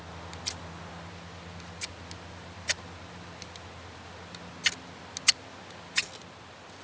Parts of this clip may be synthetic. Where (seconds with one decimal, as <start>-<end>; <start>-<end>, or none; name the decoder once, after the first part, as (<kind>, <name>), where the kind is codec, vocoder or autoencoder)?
none